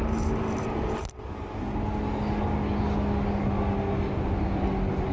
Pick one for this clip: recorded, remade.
recorded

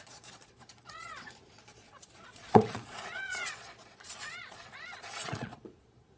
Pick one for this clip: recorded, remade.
remade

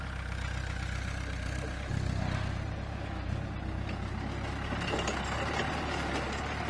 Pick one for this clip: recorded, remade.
recorded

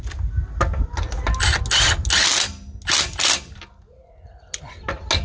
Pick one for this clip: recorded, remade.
recorded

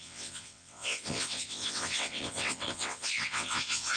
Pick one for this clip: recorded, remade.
remade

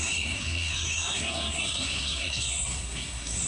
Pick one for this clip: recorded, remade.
remade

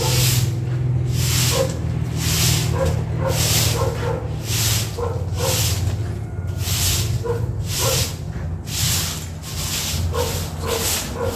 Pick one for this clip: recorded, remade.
recorded